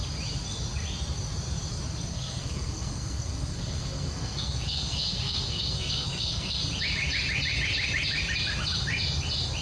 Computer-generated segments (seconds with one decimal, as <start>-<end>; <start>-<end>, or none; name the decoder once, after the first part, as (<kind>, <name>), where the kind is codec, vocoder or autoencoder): 2.1-6.6 (codec, SNAC)

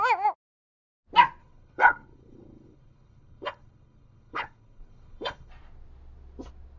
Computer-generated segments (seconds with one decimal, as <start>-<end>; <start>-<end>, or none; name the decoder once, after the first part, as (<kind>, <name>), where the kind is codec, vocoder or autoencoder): 1.4-5.5 (codec, HILCodec)